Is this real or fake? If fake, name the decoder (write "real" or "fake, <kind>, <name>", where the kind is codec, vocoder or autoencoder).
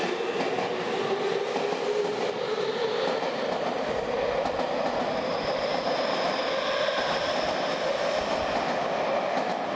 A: real